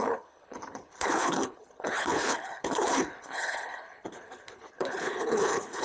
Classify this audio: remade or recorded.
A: remade